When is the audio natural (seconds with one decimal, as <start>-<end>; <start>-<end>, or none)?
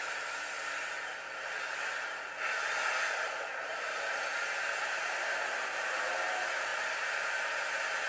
0.0-1.1; 3.7-8.1